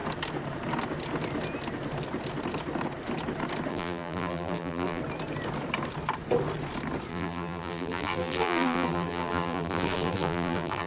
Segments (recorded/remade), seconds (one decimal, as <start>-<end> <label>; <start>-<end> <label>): 0.0-3.7 recorded; 3.7-5.0 remade; 5.0-7.1 recorded; 7.1-10.9 remade